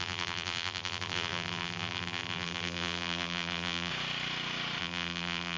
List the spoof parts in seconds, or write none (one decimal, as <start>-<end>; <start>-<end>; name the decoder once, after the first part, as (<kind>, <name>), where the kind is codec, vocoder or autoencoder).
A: 0.0-3.9 (vocoder, BigVGAN v2); 4.8-5.6